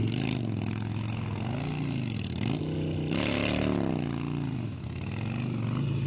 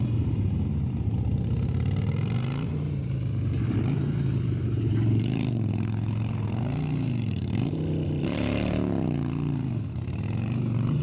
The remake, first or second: second